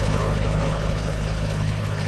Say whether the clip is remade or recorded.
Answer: remade